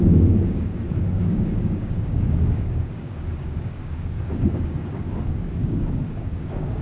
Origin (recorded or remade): remade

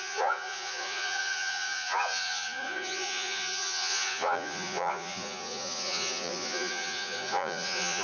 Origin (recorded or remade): remade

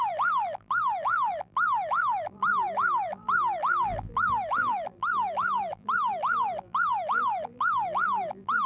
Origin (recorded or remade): remade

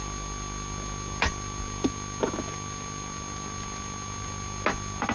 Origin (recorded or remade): recorded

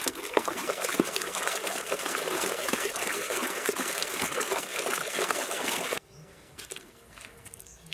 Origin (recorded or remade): remade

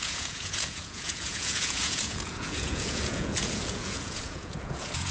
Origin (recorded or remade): remade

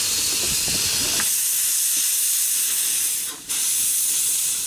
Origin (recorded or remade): recorded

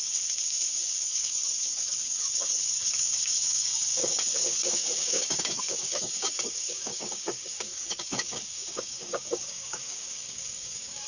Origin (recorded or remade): remade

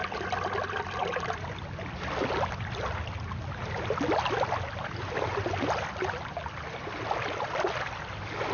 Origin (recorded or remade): recorded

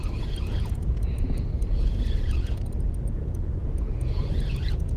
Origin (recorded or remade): remade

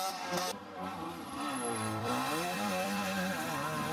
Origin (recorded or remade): remade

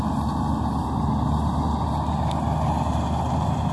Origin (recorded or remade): recorded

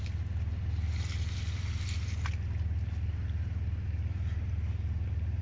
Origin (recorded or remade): recorded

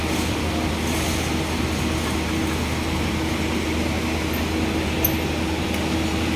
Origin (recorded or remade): recorded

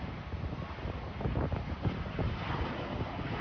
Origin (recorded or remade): recorded